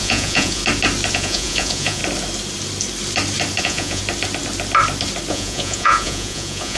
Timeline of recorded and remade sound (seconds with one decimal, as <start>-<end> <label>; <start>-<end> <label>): 0.0-0.6 remade; 0.6-1.1 recorded; 1.1-2.0 remade; 2.0-3.6 recorded; 3.6-4.0 remade; 4.0-5.3 recorded; 5.3-6.8 remade

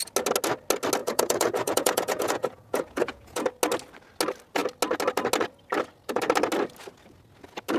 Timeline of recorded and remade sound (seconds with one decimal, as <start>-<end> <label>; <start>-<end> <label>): 0.0-1.0 recorded; 1.0-3.4 remade; 3.4-7.8 recorded